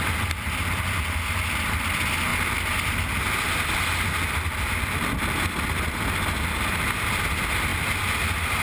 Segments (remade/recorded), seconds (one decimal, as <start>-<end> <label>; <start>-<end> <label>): 0.0-8.6 recorded